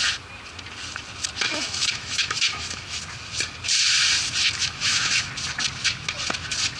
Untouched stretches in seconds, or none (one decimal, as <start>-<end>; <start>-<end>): 0.0-1.5; 3.0-4.6; 5.3-6.8